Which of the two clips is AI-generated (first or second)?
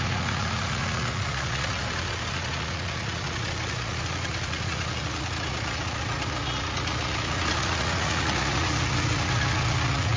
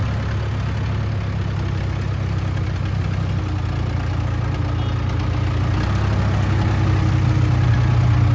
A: first